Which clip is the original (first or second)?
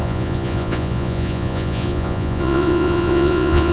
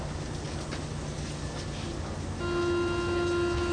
second